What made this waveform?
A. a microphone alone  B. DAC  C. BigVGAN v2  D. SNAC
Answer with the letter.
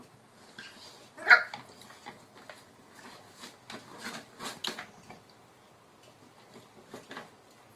A